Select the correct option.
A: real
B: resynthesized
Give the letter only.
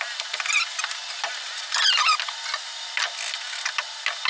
A